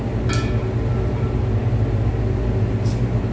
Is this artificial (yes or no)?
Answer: no